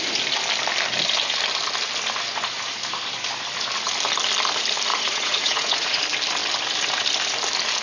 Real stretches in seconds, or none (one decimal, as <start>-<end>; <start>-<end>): 0.0-4.9; 6.0-7.8